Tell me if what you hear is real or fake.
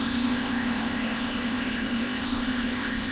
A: fake